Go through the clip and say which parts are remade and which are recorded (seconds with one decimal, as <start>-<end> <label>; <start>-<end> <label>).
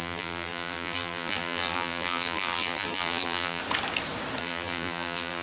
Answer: 0.0-3.6 remade; 3.6-4.4 recorded; 4.4-5.4 remade